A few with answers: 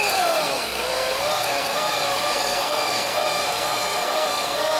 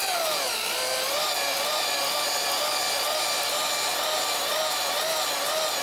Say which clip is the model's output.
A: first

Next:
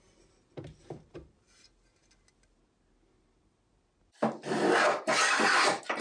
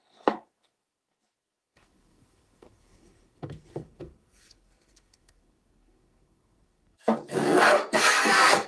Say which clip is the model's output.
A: second